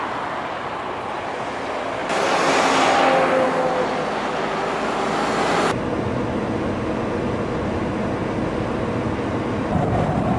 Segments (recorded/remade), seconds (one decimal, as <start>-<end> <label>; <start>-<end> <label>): 0.0-10.4 recorded